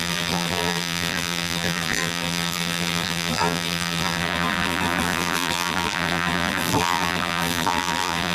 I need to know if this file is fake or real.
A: fake